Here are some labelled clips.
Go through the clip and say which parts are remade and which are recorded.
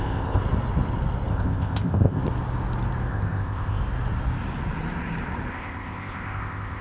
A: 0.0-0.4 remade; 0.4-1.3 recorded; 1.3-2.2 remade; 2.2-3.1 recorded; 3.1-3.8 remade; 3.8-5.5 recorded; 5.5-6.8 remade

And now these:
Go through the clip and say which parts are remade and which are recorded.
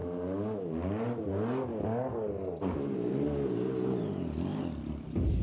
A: 0.0-5.4 recorded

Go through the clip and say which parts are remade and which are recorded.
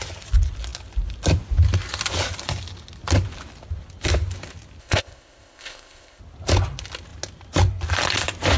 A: 0.0-4.8 recorded; 4.8-6.2 remade; 6.2-8.6 recorded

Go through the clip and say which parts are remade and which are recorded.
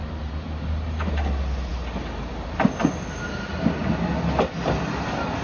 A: 0.0-5.4 recorded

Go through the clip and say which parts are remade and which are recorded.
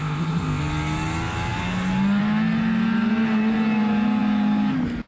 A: 0.0-0.6 remade; 0.6-5.1 recorded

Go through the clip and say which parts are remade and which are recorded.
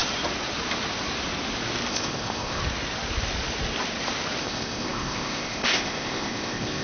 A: 0.0-1.9 recorded; 1.9-2.6 remade; 2.6-4.4 recorded; 4.4-6.8 remade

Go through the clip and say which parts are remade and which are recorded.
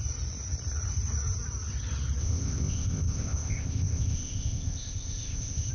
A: 0.0-2.2 recorded; 2.2-5.7 remade